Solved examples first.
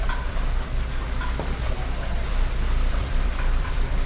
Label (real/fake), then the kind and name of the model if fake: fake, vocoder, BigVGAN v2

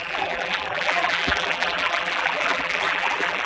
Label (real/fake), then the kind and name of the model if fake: fake, vocoder, BigVGAN v2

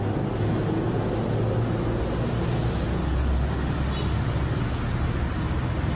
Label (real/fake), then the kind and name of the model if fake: real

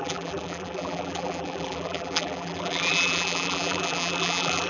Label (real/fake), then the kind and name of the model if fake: fake, vocoder, BigVGAN v2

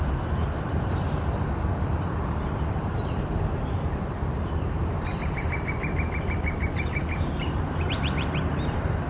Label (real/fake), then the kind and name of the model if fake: fake, vocoder, BigVGAN v2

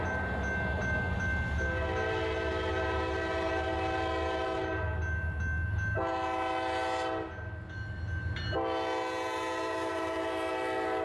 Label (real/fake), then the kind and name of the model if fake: real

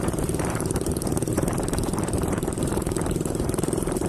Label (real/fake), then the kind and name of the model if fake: fake, vocoder, BigVGAN v2